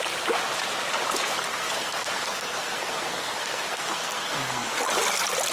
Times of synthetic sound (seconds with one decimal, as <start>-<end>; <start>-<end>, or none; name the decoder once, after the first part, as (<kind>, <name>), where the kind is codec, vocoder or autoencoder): 1.5-4.8 (codec, SNAC)